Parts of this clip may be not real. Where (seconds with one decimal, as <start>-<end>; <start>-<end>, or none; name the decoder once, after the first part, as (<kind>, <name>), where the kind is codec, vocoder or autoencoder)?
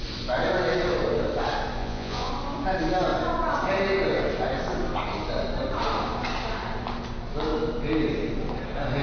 1.8-2.3 (vocoder, Vocos)